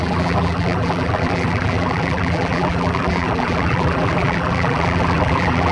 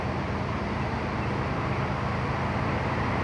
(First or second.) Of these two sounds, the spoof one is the first